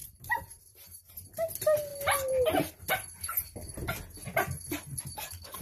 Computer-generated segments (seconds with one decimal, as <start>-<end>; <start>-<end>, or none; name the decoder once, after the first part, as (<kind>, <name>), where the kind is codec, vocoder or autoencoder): 0.0-1.1 (vocoder, BigVGAN v2)